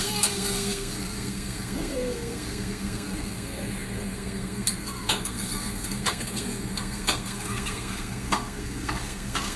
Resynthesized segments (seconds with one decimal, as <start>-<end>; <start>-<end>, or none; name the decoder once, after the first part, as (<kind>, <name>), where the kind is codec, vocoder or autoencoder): 0.0-9.6 (codec, SNAC)